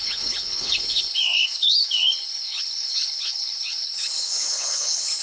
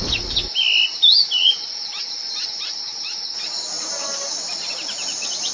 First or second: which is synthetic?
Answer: first